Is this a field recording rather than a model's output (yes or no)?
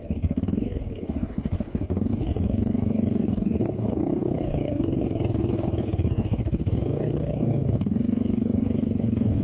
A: no